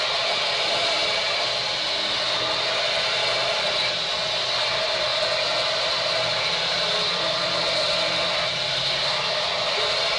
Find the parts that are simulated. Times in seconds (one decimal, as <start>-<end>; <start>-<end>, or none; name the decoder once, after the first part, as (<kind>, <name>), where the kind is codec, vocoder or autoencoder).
none